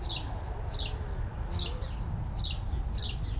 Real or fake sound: real